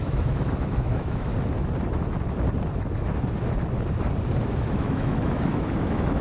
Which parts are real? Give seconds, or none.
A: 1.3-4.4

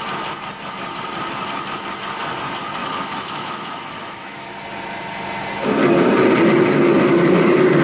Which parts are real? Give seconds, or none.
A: 0.0-2.8; 4.5-7.8